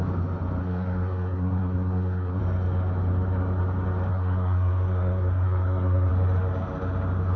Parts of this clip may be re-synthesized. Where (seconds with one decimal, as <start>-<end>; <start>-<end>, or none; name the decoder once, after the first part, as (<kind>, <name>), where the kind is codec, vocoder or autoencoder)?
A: 0.6-2.4 (codec, SNAC); 4.1-6.1

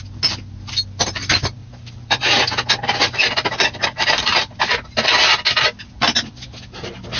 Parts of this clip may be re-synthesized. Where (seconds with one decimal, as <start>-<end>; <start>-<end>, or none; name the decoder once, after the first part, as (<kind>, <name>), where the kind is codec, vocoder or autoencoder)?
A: 1.6-4.6 (vocoder, BigVGAN v2)

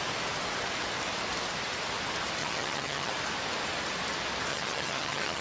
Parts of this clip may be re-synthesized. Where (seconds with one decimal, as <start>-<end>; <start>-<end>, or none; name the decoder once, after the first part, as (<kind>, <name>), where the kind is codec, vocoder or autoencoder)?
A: 2.4-3.1 (vocoder, HiFi-GAN); 4.5-5.4

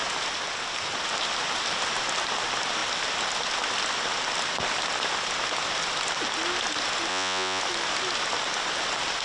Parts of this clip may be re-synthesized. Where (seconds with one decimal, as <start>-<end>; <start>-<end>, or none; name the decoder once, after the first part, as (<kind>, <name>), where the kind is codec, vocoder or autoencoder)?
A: 7.1-7.6 (vocoder, Vocos)

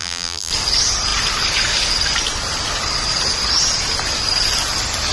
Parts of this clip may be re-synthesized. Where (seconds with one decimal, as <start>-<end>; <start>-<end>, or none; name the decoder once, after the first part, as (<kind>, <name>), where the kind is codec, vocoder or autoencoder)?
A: 0.0-0.5 (vocoder, BigVGAN v2)